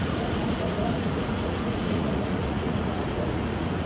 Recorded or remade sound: remade